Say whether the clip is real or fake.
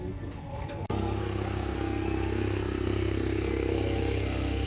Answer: fake